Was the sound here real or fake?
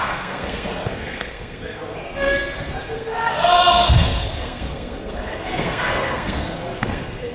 fake